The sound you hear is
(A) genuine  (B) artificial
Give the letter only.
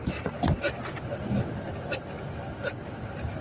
A